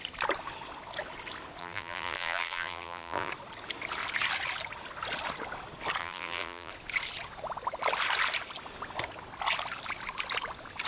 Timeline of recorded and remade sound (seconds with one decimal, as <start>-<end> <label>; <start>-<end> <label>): 0.0-1.6 recorded; 1.6-3.3 remade; 3.3-6.0 recorded; 6.0-6.7 remade; 6.7-10.9 recorded